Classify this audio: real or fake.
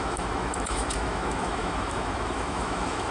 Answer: fake